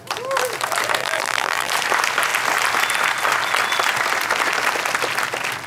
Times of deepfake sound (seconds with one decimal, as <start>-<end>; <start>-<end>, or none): 1.0-1.7